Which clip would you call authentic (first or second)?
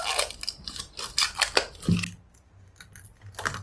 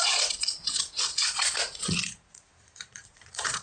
first